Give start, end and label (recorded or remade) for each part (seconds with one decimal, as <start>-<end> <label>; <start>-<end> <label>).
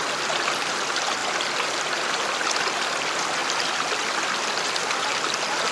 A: 0.0-5.7 recorded